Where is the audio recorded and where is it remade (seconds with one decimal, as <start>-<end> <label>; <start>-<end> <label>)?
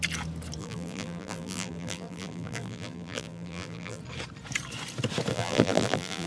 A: 0.0-0.6 recorded; 0.6-4.0 remade; 4.0-5.3 recorded; 5.3-6.3 remade